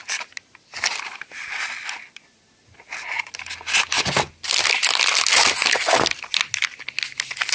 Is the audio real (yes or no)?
yes